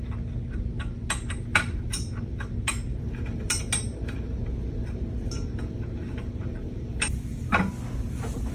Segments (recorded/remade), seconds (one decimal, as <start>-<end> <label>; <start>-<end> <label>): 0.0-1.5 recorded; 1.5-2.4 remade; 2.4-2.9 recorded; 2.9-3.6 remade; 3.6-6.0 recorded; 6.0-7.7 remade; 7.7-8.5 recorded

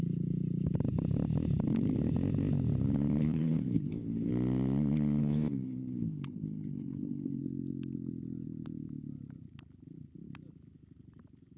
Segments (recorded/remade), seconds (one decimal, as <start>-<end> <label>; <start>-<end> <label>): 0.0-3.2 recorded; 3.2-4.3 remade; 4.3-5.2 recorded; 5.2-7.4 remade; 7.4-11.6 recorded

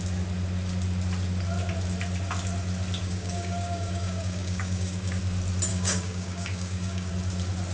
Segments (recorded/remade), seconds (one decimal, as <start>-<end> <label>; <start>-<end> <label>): 0.0-3.0 recorded; 3.0-5.2 remade; 5.2-5.7 recorded; 5.7-7.1 remade; 7.1-7.7 recorded